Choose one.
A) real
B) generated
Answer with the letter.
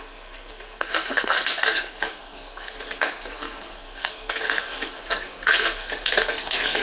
B